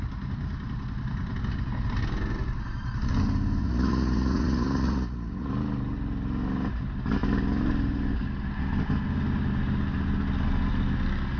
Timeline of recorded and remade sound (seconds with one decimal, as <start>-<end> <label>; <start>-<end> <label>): 0.0-3.6 recorded; 3.6-5.5 remade; 5.5-11.4 recorded